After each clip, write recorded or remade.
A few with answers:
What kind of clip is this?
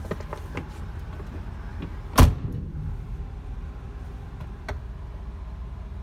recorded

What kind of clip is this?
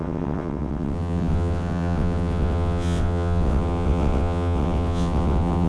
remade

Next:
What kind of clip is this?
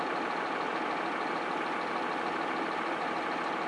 recorded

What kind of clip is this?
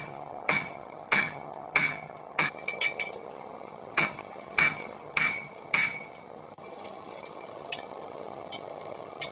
remade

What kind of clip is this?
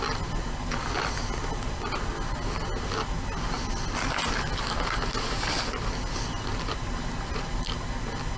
recorded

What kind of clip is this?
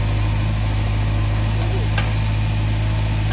recorded